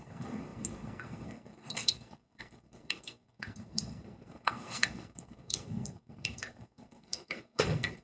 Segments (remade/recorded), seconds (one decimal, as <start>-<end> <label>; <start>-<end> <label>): 0.0-8.0 remade